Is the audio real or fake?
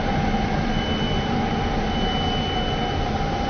real